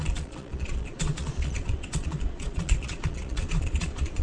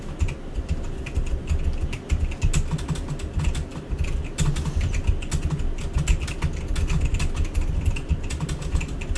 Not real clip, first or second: first